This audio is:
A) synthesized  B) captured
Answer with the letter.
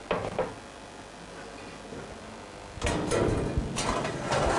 B